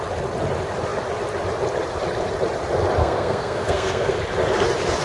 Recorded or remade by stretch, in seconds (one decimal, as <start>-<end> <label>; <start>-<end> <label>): 0.0-3.0 recorded; 3.0-4.1 remade; 4.1-5.0 recorded